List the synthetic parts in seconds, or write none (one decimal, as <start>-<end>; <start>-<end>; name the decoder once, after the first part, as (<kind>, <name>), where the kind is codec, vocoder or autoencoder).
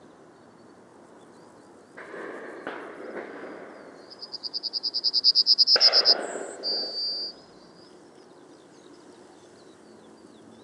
none